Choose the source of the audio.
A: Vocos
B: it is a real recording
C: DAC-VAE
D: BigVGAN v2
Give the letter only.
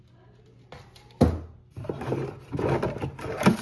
B